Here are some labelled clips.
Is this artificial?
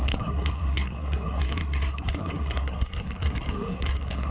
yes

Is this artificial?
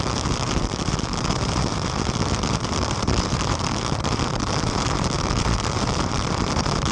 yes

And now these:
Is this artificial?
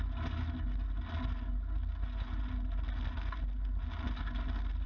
no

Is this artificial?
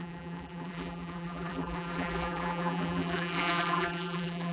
yes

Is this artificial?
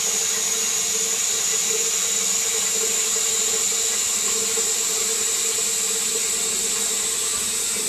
no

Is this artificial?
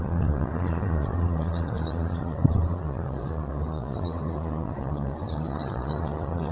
yes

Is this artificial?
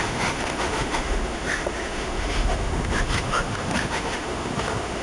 yes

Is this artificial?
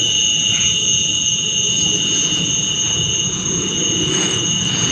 yes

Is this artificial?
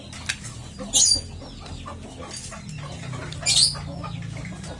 no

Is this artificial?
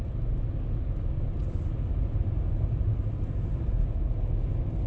no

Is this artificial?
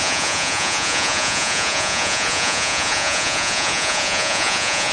yes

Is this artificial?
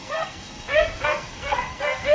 yes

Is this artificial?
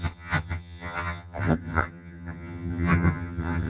yes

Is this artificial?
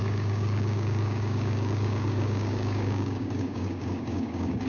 yes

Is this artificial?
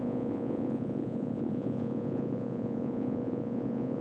yes